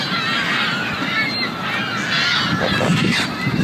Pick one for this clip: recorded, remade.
recorded